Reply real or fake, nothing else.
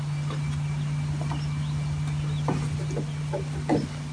real